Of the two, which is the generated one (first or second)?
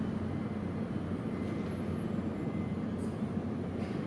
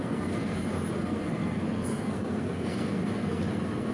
second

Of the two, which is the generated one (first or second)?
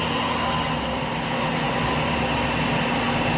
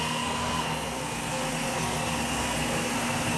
second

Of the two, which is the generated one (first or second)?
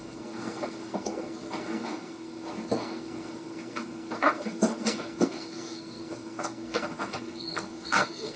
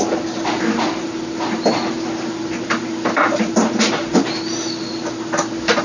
first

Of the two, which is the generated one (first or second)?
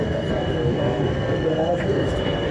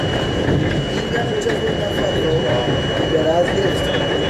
first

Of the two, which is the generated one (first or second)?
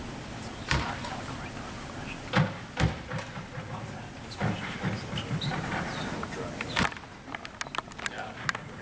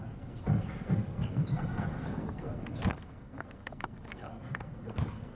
second